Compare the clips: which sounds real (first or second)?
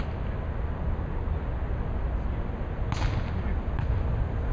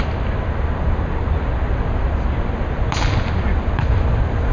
first